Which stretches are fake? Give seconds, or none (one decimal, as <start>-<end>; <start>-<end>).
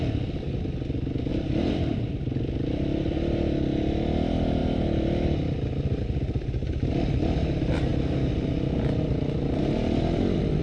1.3-2.1